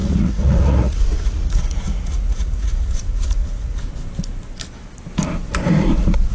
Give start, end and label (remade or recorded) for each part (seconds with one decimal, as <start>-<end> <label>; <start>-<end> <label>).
0.0-3.8 remade; 3.8-6.3 recorded